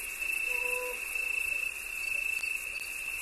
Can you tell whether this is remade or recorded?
recorded